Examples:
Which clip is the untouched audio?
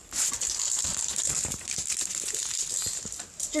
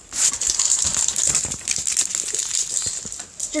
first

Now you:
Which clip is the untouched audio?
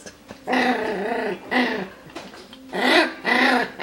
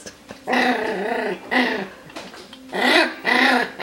first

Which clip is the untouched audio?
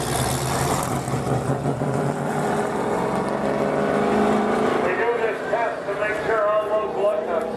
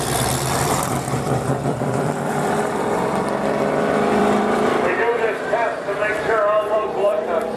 first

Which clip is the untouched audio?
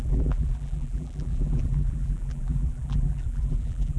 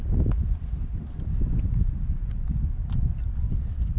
second